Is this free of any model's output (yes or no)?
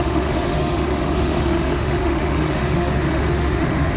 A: no